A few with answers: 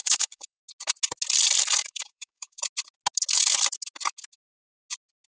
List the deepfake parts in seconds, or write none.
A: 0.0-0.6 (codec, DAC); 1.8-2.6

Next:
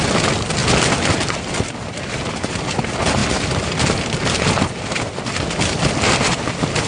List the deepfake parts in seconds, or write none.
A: none

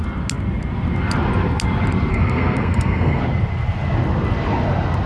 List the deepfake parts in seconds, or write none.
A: 2.1-3.2 (codec, SNAC)

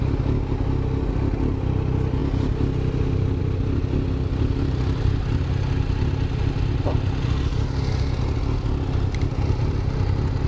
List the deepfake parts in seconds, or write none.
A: none

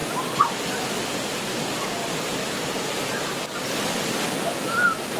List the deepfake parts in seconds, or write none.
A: none